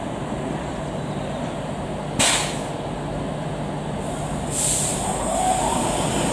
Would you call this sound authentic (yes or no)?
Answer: yes